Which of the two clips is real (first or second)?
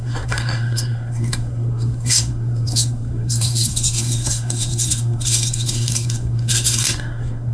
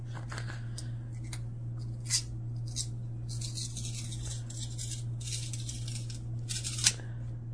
second